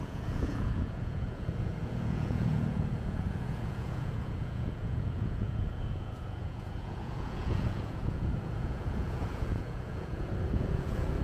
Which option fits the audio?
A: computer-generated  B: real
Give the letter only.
A